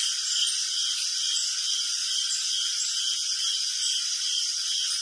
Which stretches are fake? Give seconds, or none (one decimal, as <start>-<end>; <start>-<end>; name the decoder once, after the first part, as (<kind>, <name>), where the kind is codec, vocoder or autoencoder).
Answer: none